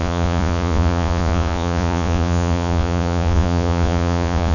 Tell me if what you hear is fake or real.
fake